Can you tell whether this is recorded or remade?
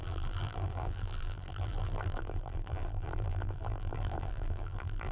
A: remade